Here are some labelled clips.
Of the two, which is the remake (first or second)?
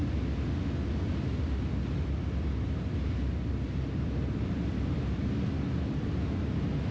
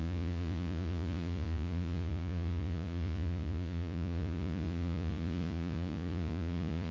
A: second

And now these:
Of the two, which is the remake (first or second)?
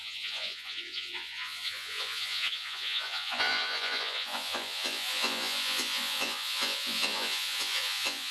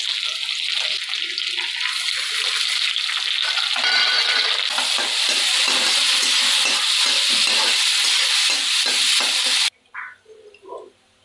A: first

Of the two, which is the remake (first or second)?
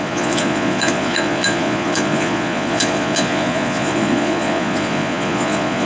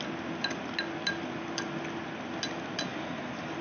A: first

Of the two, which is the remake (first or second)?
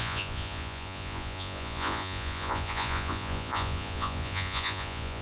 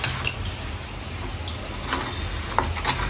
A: first